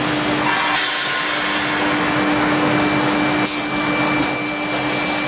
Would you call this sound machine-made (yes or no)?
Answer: no